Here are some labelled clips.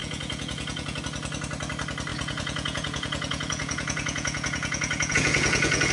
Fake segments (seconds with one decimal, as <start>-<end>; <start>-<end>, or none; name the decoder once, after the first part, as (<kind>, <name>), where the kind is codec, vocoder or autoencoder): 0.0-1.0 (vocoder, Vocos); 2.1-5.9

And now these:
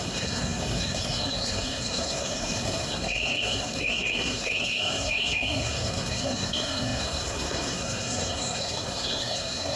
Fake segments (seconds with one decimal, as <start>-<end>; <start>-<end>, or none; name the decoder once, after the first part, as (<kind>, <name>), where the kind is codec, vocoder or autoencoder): 0.0-9.8 (codec, SNAC)

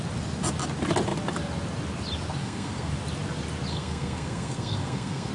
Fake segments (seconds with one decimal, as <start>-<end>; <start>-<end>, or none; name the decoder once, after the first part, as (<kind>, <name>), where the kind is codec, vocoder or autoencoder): 2.4-2.9 (codec, SNAC); 3.7-5.3

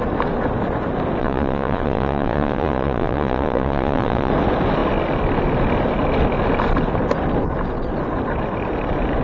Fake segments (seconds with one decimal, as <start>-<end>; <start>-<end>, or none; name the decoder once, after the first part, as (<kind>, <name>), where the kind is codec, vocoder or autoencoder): 1.2-4.3 (vocoder, Vocos)

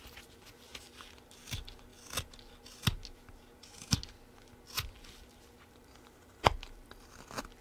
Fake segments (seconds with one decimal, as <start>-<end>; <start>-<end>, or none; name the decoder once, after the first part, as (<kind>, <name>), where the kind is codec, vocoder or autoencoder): 5.8-7.0 (vocoder, BigVGAN v2)

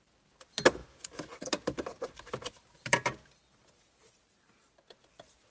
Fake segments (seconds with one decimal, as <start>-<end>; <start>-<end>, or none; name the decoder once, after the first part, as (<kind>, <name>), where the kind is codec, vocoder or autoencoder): none

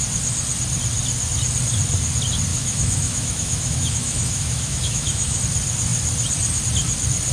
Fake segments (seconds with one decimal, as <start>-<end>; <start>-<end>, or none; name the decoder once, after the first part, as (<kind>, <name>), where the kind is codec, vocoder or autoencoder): 2.5-5.4 (autoencoder, DAC-VAE)

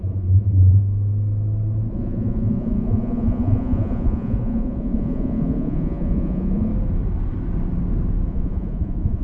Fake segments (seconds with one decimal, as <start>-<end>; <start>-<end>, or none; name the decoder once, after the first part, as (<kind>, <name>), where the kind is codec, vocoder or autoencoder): 0.0-0.8 (vocoder, Vocos); 1.9-6.7; 8.3-9.2